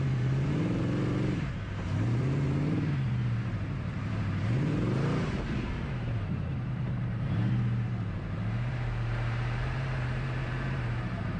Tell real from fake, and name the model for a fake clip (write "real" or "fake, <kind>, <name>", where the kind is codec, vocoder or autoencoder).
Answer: fake, vocoder, BigVGAN v2